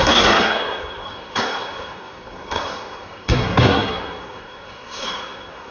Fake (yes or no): yes